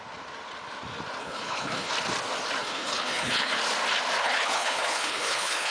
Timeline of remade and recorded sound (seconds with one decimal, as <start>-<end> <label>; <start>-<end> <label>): 0.0-1.2 recorded; 1.2-1.9 remade; 1.9-2.6 recorded; 2.6-3.6 remade; 3.6-4.2 recorded; 4.2-5.7 remade